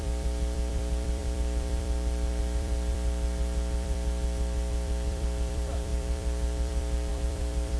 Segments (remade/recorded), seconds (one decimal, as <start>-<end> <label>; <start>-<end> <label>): 0.0-7.8 remade